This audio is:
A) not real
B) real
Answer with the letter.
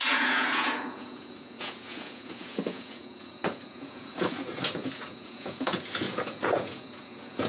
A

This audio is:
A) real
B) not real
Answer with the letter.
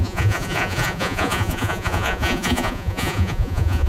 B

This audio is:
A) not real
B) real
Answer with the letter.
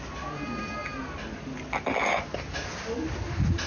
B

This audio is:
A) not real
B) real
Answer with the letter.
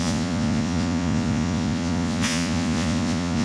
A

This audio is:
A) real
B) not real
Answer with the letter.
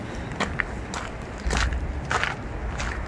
A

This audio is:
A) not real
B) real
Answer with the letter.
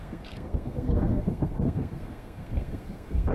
A